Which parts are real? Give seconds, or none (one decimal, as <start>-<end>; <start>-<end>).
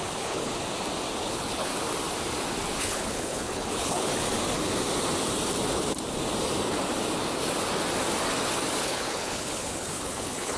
0.5-1.2; 1.7-2.8; 4.1-8.8